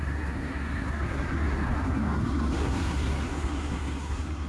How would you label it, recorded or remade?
remade